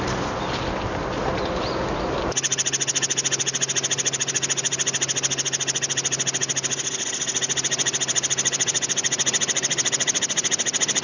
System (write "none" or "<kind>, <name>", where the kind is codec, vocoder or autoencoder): none